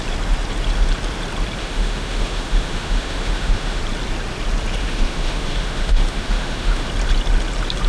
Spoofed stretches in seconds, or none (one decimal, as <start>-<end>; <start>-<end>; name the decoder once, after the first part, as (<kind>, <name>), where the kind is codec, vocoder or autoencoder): 1.6-3.8 (autoencoder, DAC-VAE); 4.8-6.9

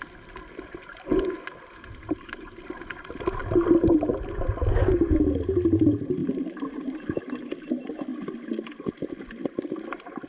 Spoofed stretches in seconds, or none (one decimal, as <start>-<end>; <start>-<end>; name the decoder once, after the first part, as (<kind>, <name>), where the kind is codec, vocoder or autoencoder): 6.2-7.5 (vocoder, BigVGAN v2)

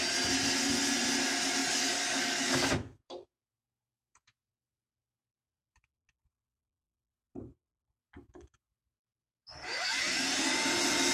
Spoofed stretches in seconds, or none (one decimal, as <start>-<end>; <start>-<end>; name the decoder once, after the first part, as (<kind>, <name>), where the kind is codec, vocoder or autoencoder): 1.6-5.9 (codec, DAC); 8.0-10.0